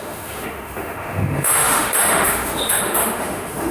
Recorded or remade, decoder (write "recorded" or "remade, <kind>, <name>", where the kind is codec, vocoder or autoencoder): remade, autoencoder, DAC-VAE